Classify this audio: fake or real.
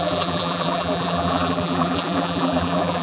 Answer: fake